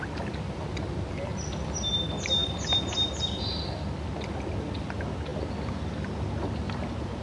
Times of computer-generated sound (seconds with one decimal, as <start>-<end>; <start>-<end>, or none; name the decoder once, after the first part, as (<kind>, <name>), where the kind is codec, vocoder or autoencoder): none